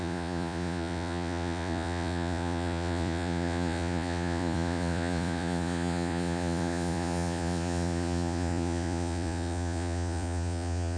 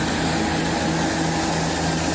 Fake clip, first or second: first